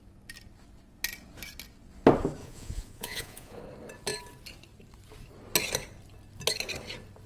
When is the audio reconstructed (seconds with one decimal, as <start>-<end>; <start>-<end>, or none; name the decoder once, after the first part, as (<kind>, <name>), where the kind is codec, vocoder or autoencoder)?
2.4-3.6 (vocoder, Vocos)